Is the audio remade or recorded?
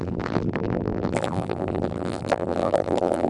remade